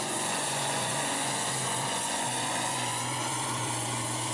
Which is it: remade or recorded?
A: remade